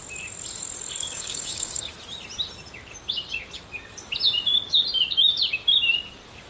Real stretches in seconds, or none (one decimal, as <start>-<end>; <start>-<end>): 0.0-1.0; 1.9-6.5